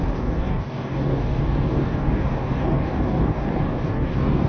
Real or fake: fake